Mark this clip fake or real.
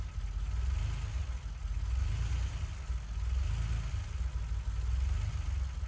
real